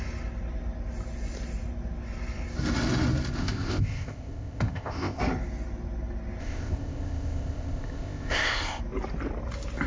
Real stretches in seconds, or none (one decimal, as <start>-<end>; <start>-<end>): 0.0-3.4; 5.2-6.4; 8.8-9.9